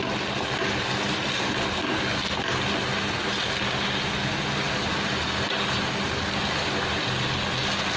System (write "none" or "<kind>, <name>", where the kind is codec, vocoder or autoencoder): none